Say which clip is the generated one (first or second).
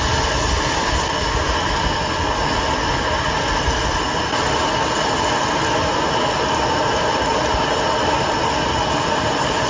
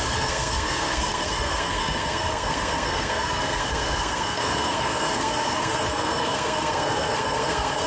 second